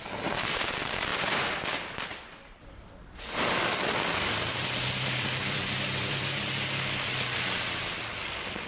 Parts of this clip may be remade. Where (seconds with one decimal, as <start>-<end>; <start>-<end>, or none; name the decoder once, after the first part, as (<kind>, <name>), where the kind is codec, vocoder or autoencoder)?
2.1-6.5 (vocoder, BigVGAN v2)